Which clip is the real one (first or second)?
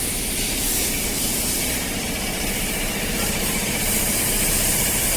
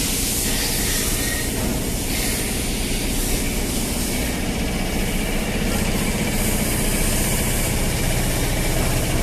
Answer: second